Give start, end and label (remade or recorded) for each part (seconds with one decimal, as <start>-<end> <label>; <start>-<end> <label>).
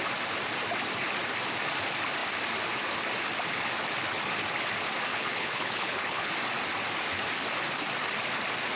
0.0-5.1 recorded; 5.1-6.3 remade; 6.3-8.8 recorded